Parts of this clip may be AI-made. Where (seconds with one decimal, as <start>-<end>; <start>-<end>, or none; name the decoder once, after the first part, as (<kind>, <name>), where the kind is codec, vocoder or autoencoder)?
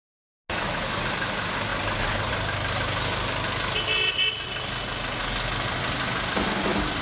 none